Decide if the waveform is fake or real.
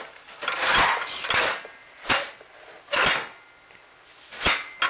real